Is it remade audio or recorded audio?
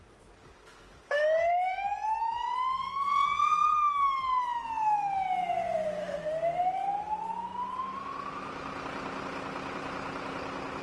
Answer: recorded